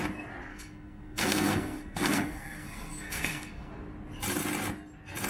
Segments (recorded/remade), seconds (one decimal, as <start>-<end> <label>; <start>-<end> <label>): 0.0-0.5 recorded; 0.5-3.7 remade; 3.7-5.3 recorded